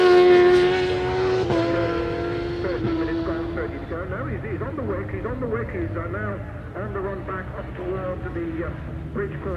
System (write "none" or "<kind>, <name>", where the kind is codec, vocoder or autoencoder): none